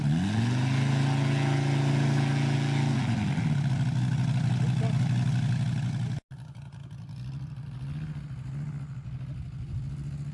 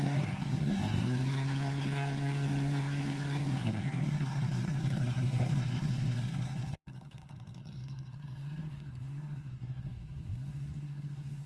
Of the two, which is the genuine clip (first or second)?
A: first